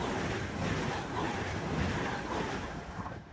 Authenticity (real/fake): real